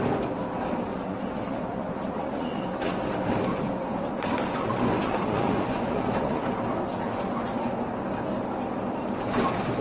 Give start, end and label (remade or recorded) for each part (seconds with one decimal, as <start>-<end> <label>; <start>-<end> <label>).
0.0-0.9 recorded; 0.9-3.0 remade; 3.0-3.5 recorded; 3.5-6.4 remade; 6.4-6.9 recorded; 6.9-7.7 remade; 7.7-9.8 recorded